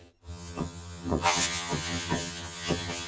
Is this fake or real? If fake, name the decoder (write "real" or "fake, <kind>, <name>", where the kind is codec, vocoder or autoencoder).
fake, vocoder, HiFi-GAN